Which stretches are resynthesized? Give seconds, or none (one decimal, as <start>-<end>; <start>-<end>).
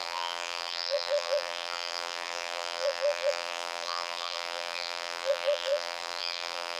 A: 0.0-6.8